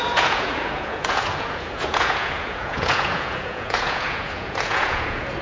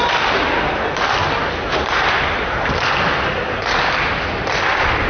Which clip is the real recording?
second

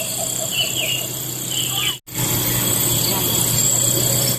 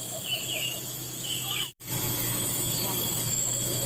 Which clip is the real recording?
first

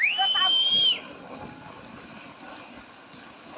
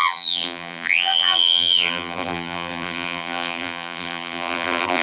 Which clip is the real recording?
first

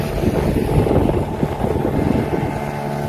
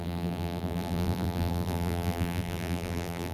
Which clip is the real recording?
first